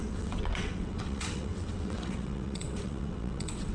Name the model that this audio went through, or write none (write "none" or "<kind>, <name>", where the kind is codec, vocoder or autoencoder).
vocoder, WaveNeXt